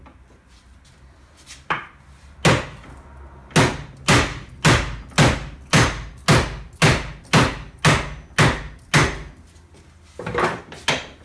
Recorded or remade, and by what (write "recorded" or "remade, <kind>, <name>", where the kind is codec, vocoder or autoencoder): recorded